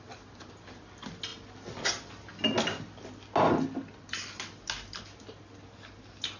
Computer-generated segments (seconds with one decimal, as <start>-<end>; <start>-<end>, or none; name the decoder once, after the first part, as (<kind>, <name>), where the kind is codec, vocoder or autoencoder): none